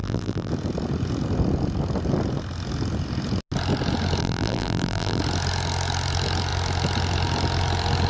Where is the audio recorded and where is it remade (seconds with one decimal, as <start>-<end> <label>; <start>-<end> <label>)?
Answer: 0.0-0.5 remade; 0.5-4.2 recorded; 4.2-5.2 remade; 5.2-8.1 recorded